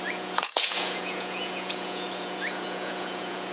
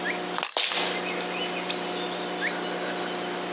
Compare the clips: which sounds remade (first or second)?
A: first